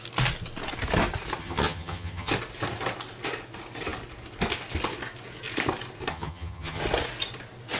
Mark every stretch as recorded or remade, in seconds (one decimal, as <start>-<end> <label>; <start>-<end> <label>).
0.0-1.4 recorded; 1.4-2.3 remade; 2.3-6.1 recorded; 6.1-6.8 remade; 6.8-7.8 recorded